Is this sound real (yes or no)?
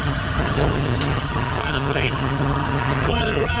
no